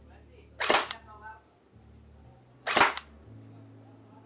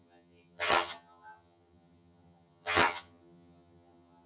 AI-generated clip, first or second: second